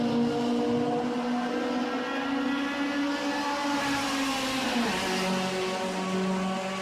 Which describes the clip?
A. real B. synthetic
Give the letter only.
A